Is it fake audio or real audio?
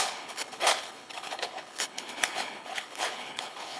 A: fake